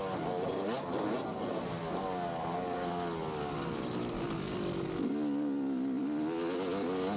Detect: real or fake real